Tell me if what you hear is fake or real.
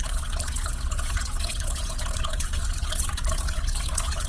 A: fake